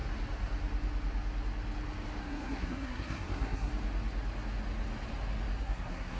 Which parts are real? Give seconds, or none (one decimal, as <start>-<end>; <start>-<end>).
0.0-2.2; 3.7-5.6